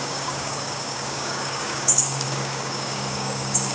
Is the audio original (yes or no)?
no